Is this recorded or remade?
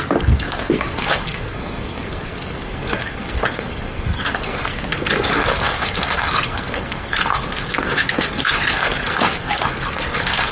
remade